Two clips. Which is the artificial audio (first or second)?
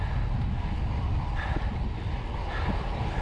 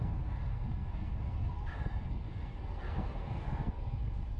second